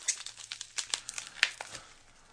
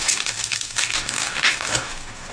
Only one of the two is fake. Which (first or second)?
second